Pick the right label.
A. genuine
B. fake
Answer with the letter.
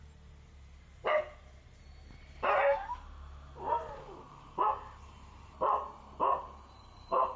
A